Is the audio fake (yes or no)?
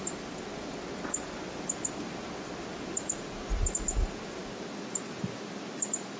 no